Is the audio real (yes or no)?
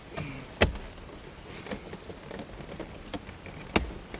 yes